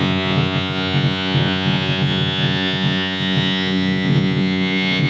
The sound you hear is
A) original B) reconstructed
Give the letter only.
B